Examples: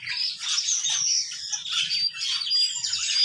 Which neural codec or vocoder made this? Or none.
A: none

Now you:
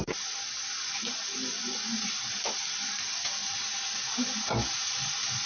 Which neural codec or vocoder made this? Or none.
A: none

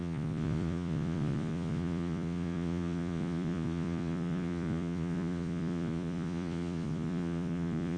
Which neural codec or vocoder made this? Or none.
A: vocoder, Vocos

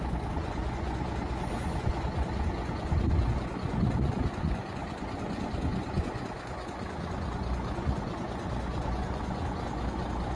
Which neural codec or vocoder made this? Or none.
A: vocoder, Vocos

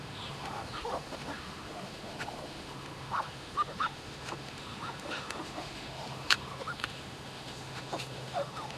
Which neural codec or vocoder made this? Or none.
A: autoencoder, DAC-VAE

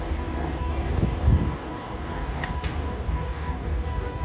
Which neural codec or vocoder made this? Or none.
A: codec, DAC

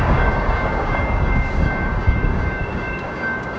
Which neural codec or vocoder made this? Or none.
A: codec, DAC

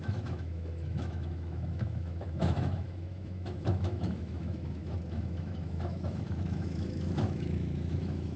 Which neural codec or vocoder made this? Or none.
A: autoencoder, DAC-VAE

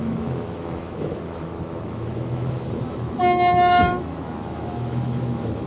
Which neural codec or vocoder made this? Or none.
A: autoencoder, DAC-VAE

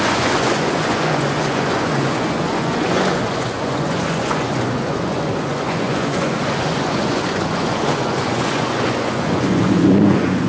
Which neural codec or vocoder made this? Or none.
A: vocoder, Vocos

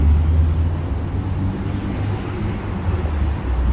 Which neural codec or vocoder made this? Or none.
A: none